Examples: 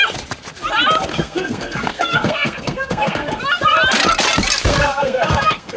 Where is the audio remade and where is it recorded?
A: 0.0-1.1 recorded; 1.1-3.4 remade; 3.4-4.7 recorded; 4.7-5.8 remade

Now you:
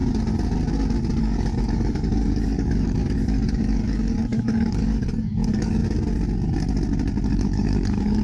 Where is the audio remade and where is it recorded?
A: 0.0-1.2 recorded; 1.2-5.8 remade; 5.8-7.3 recorded; 7.3-8.2 remade

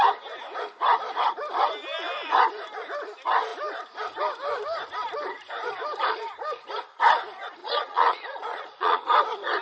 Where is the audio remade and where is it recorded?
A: 0.0-7.6 recorded; 7.6-9.0 remade; 9.0-9.6 recorded

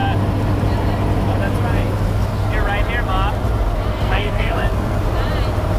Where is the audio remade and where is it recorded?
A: 0.0-3.9 recorded; 3.9-5.0 remade; 5.0-5.8 recorded

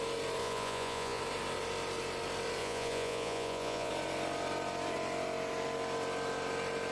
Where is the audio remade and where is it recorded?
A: 0.0-0.4 recorded; 0.4-1.2 remade; 1.2-2.6 recorded; 2.6-3.9 remade; 3.9-6.9 recorded

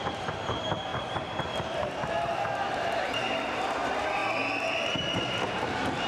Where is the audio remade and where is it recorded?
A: 0.0-4.2 remade; 4.2-4.8 recorded; 4.8-6.1 remade

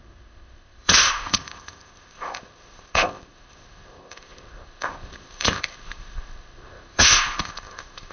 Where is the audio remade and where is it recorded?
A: 0.0-8.1 remade